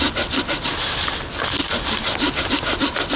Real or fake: real